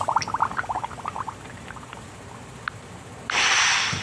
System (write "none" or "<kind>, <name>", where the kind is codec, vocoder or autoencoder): none